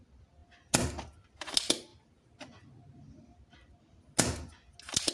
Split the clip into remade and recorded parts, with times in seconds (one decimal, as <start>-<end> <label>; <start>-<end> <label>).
0.0-5.1 recorded